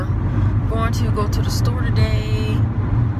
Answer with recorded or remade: recorded